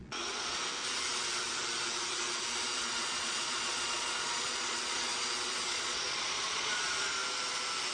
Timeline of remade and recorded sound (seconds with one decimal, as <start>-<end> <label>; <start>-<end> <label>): 0.0-0.6 remade; 0.6-2.8 recorded; 2.8-5.1 remade; 5.1-5.7 recorded; 5.7-7.2 remade; 7.2-7.9 recorded